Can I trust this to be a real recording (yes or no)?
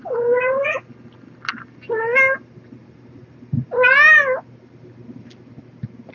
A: yes